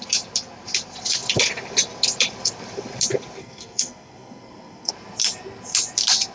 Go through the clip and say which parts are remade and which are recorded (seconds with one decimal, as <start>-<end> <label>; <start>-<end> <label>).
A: 0.0-3.4 recorded; 3.4-4.9 remade; 4.9-6.3 recorded